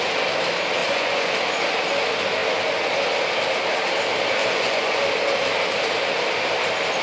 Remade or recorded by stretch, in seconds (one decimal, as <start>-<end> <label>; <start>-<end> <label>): 0.0-0.8 recorded; 0.8-1.3 remade; 1.3-4.4 recorded; 4.4-5.0 remade; 5.0-7.0 recorded